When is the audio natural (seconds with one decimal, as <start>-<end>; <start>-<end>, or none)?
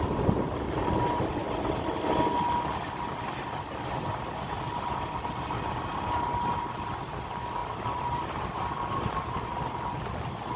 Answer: 0.0-7.6; 8.7-10.6